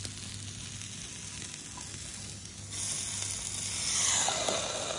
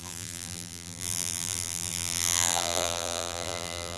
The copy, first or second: second